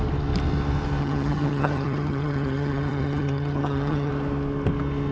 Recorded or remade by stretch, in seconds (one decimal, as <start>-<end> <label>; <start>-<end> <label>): 0.0-1.0 recorded; 1.0-4.1 remade; 4.1-5.1 recorded